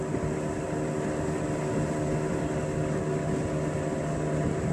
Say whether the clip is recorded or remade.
recorded